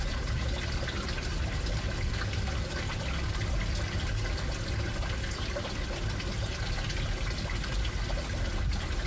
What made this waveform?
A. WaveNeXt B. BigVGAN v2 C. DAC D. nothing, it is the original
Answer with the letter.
D